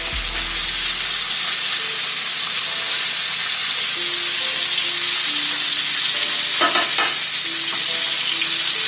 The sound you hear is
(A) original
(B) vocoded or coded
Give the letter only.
A